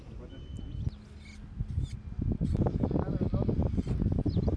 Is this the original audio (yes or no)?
yes